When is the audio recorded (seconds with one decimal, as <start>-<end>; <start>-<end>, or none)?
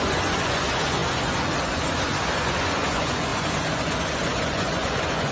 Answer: none